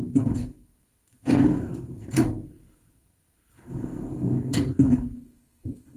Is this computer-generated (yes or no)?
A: yes